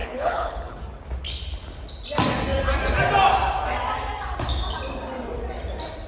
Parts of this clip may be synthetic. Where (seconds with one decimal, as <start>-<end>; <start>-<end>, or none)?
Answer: 0.0-0.8